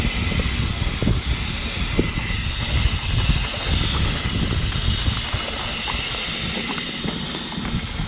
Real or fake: real